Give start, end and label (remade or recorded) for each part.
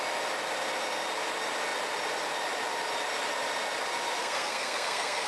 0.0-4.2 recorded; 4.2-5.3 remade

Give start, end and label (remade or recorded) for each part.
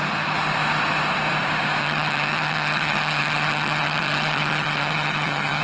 0.0-1.8 recorded; 1.8-5.6 remade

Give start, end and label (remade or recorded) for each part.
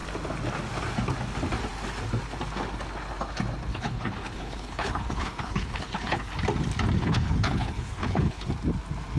0.0-3.7 recorded; 3.7-6.2 remade; 6.2-7.0 recorded; 7.0-8.5 remade; 8.5-9.2 recorded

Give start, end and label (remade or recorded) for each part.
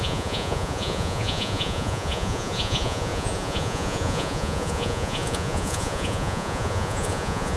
0.0-7.6 remade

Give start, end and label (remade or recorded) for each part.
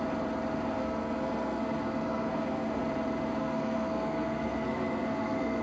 0.0-0.8 recorded; 0.8-2.8 remade; 2.8-3.4 recorded; 3.4-5.6 remade